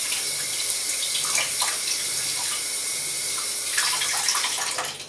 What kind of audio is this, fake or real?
real